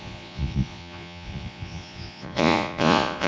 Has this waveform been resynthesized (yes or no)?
yes